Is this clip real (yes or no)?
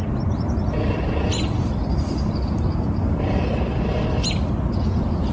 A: yes